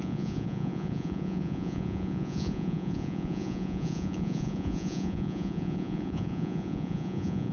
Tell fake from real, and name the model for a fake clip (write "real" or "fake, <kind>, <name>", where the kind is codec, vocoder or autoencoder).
fake, vocoder, Vocos